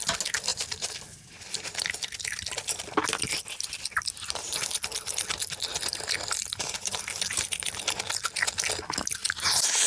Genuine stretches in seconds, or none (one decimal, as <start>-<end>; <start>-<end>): 0.0-5.7; 7.7-9.2